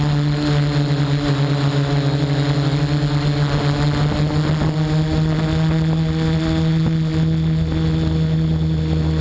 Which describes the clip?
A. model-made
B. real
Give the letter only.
B